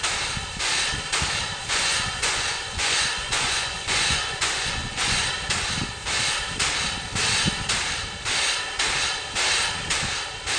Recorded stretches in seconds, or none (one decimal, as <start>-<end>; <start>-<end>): 0.0-1.6; 5.3-10.6